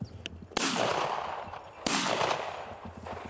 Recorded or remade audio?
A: recorded